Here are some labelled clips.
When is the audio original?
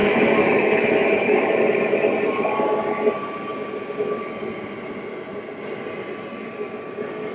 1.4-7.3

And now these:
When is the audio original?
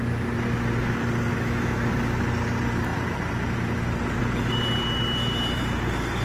0.0-1.3; 1.9-6.2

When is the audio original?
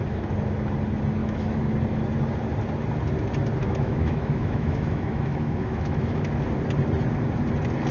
0.0-1.2; 1.7-3.6; 6.3-7.9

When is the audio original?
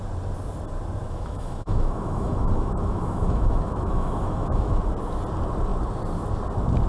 0.0-1.0; 4.8-6.9